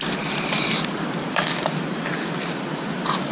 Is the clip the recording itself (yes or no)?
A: no